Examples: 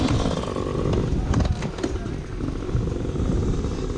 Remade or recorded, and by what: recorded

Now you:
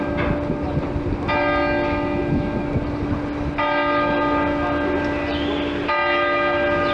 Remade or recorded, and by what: recorded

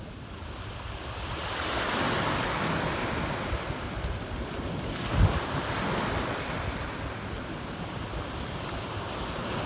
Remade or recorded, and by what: recorded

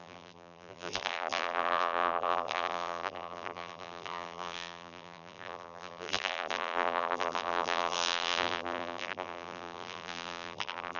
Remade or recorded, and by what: remade, vocoder, BigVGAN v2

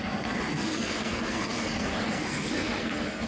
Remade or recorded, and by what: remade, codec, SNAC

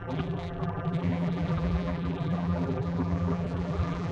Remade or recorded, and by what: remade, vocoder, BigVGAN v2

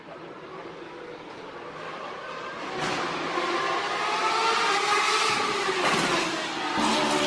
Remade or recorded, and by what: recorded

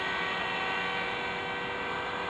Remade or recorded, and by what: recorded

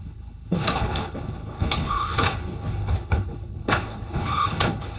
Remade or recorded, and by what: remade, codec, HILCodec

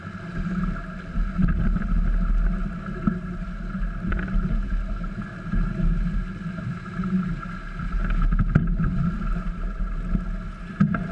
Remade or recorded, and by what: recorded